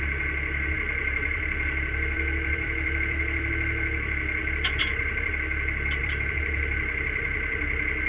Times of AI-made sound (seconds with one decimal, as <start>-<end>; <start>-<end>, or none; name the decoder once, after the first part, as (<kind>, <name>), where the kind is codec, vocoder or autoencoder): 1.0-3.5 (vocoder, BigVGAN v2); 4.4-5.3; 6.0-8.1